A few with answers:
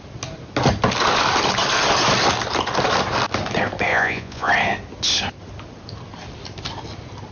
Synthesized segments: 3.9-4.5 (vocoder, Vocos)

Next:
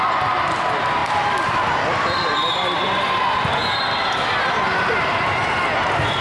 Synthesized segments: 1.0-2.8 (vocoder, BigVGAN v2)

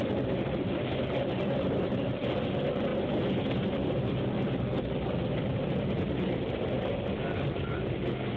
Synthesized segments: none

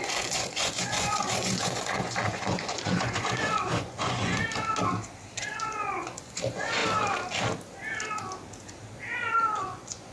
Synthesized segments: 0.0-4.4 (vocoder, Vocos); 5.4-6.8; 9.6-10.1

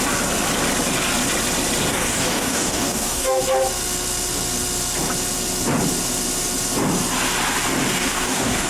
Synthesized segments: 1.9-3.4 (codec, DAC); 7.9-8.7

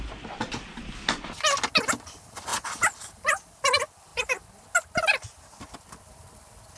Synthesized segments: none

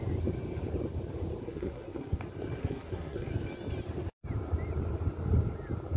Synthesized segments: 1.4-2.2 (codec, SNAC); 2.6-3.3

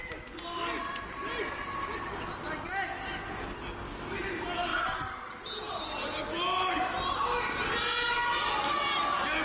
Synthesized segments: none